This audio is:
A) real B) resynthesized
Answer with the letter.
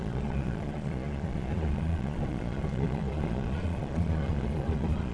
B